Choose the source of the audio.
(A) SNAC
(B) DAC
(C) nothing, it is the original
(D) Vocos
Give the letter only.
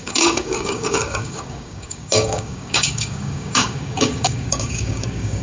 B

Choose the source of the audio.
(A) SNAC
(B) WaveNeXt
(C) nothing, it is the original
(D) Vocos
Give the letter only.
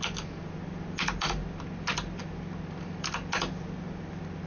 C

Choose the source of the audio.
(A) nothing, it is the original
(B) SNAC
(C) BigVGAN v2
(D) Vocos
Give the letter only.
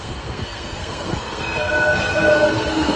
B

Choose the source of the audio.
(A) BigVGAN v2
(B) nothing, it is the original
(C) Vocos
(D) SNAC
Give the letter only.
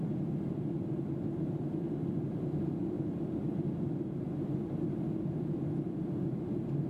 B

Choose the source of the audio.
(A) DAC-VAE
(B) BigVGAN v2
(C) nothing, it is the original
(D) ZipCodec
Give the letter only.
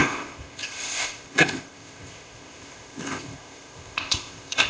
D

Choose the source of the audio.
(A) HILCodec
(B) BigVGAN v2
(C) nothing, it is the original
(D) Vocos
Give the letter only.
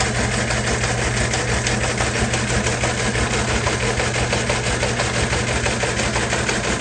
C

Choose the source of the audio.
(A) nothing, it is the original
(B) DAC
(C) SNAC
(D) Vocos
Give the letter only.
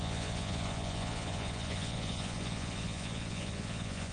D